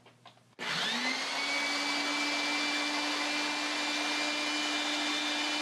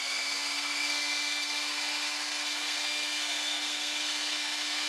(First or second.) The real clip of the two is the first